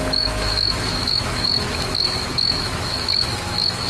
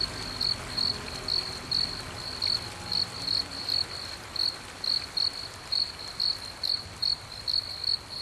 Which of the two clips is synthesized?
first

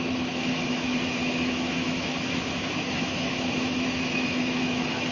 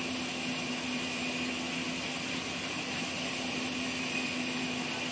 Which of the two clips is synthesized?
first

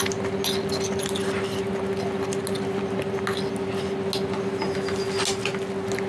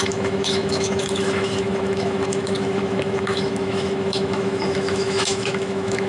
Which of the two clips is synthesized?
second